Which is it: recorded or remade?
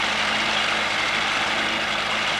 recorded